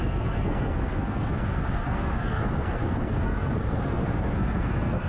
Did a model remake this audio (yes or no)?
yes